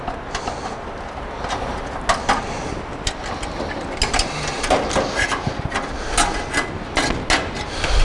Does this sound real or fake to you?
real